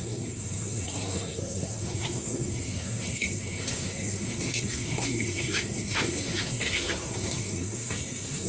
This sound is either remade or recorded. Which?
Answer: remade